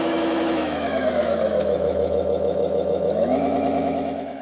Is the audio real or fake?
fake